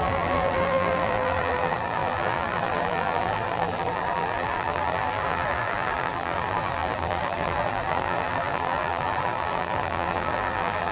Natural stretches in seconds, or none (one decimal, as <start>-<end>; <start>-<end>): none

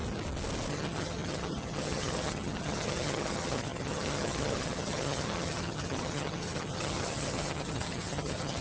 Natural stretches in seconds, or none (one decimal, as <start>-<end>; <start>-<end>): 0.0-0.7